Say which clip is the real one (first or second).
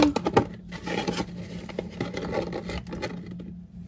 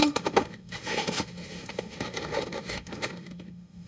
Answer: first